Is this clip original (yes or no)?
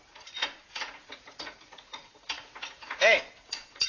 no